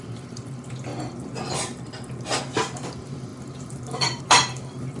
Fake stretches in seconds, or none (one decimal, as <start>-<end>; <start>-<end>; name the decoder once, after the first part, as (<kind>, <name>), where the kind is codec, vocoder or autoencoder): 0.0-0.9 (vocoder, BigVGAN v2); 2.4-5.0

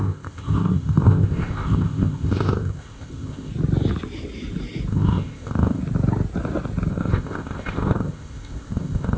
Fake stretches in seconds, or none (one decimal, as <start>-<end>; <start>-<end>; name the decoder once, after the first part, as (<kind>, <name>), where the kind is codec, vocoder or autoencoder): 0.0-3.5 (codec, ZipCodec); 4.9-5.8; 6.9-9.2

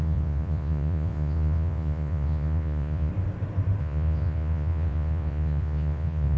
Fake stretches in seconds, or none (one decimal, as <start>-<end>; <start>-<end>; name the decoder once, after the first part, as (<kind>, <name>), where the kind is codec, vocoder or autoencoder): 0.0-3.1 (vocoder, Vocos); 3.8-6.4

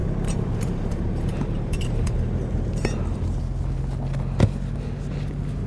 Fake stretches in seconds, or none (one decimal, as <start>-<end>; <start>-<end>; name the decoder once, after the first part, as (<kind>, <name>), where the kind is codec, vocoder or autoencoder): 0.0-3.4 (vocoder, BigVGAN v2)

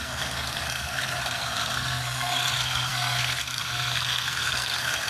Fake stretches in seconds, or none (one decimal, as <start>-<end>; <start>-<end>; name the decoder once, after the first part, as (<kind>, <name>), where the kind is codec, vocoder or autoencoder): 0.0-5.1 (codec, SNAC)